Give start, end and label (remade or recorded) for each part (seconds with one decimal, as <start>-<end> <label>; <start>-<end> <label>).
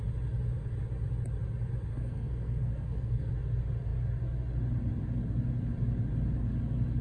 0.0-1.9 recorded; 1.9-3.3 remade; 3.3-7.0 recorded